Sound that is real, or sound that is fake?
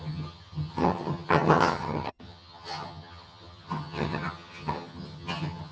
fake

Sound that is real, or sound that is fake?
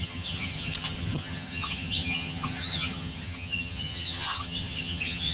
fake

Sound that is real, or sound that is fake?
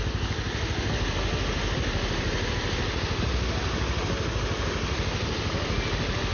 real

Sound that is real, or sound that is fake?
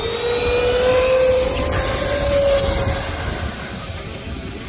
real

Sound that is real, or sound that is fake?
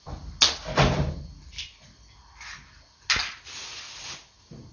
real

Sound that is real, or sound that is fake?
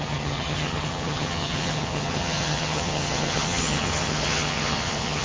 fake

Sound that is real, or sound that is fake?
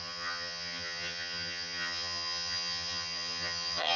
fake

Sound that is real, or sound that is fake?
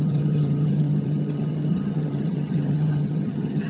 fake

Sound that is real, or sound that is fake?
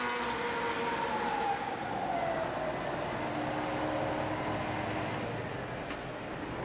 real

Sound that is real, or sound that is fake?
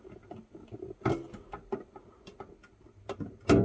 real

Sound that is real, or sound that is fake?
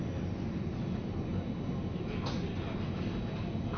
real